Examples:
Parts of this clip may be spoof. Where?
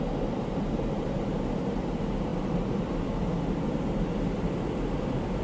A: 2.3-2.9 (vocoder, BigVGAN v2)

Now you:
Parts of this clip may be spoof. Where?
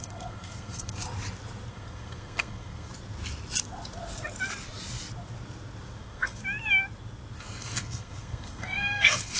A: 0.0-1.0 (codec, SNAC); 1.7-2.9; 6.0-6.4; 7.4-9.4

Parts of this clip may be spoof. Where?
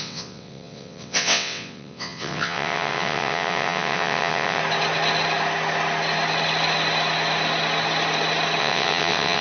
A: 0.0-4.6 (vocoder, WaveNeXt); 8.6-9.4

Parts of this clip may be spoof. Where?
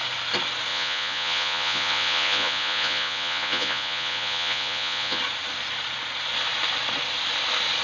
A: 0.7-5.2 (vocoder, Vocos)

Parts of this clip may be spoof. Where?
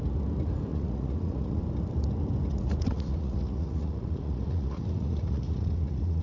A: 0.7-1.6 (vocoder, Vocos); 2.5-6.2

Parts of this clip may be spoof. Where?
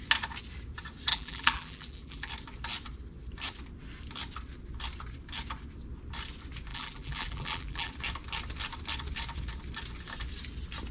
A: 1.1-2.3 (vocoder, BigVGAN v2); 6.7-7.9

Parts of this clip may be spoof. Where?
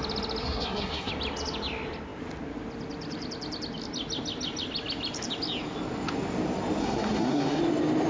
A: 0.4-1.1 (codec, SNAC); 6.8-7.6